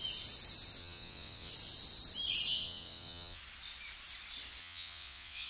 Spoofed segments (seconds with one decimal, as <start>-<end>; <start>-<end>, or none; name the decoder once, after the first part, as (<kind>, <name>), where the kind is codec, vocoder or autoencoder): 0.8-1.5 (vocoder, WaveNeXt); 2.5-3.4; 4.6-5.5